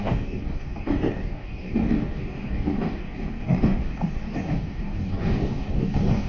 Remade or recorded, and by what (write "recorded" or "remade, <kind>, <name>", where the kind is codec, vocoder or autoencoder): remade, codec, DAC